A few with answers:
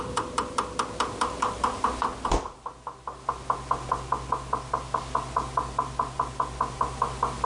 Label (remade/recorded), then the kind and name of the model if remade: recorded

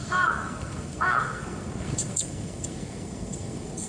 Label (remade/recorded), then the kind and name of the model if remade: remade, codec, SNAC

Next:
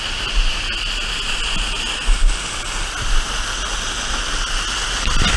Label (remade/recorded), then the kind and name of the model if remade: recorded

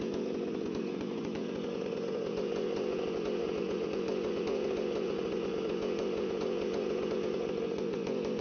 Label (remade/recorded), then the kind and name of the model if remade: remade, vocoder, Vocos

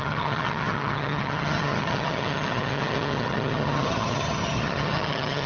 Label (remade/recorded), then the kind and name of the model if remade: remade, vocoder, HiFi-GAN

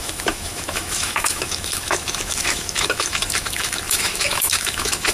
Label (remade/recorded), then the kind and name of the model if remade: remade, autoencoder, DAC-VAE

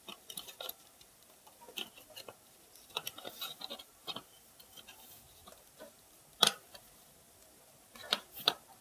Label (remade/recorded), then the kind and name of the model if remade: remade, vocoder, BigVGAN v2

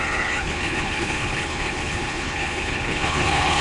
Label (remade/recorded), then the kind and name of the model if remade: remade, codec, HILCodec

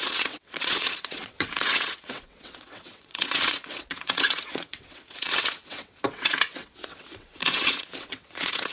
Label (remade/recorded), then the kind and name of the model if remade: remade, vocoder, WaveNeXt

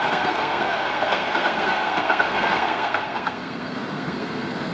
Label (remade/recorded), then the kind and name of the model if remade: remade, codec, SNAC